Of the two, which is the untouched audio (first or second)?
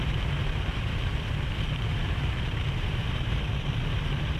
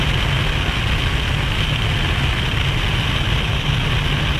second